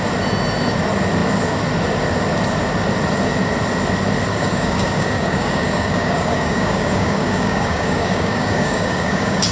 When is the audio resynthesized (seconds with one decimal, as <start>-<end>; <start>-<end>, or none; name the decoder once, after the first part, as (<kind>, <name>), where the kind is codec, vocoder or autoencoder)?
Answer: 4.3-9.5 (codec, DAC)